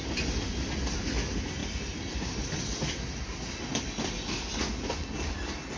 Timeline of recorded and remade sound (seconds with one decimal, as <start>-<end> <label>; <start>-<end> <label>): 0.0-5.8 recorded